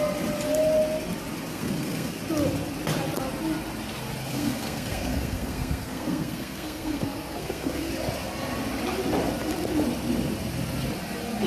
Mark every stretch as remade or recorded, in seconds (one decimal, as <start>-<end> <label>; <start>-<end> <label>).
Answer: 0.0-1.5 recorded; 1.5-2.2 remade; 2.2-4.3 recorded; 4.3-7.9 remade; 7.9-11.5 recorded